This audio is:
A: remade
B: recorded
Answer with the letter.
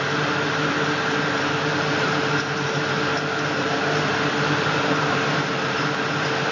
B